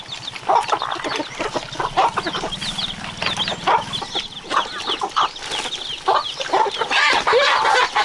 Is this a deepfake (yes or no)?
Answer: no